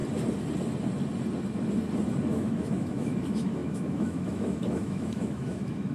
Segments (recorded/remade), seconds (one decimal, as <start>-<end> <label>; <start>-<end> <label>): 0.0-2.3 recorded; 2.3-5.9 remade